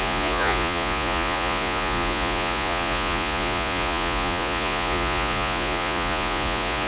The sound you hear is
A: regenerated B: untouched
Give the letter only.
A